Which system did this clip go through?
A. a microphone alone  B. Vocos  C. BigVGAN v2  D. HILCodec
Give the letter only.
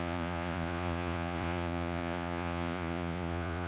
B